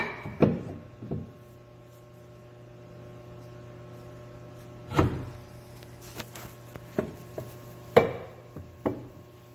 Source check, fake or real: real